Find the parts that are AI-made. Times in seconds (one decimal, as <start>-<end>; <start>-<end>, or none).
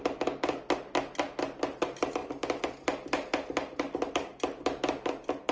2.2-2.7